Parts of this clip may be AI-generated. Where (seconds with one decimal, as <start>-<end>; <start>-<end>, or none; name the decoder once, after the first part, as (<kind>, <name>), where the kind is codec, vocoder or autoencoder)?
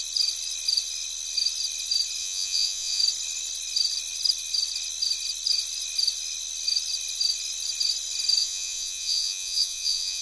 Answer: 2.2-3.0 (vocoder, Vocos); 8.4-10.2